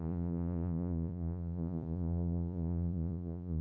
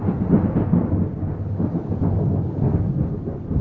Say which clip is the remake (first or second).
first